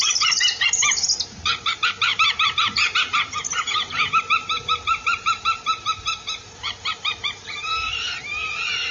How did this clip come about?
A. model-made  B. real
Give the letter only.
A